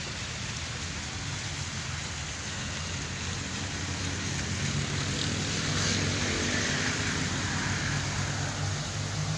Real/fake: real